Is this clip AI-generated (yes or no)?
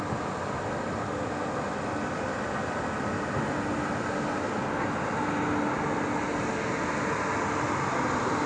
no